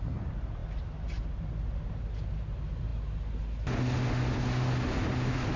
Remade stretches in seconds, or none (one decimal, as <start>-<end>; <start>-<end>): none